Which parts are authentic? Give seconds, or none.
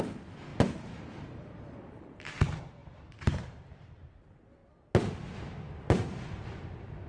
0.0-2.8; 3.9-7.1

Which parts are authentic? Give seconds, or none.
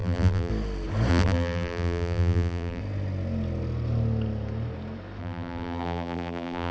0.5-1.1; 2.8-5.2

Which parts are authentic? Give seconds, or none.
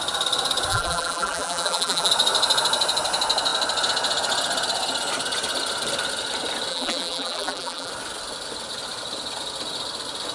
0.0-0.7; 2.1-6.7; 7.9-10.3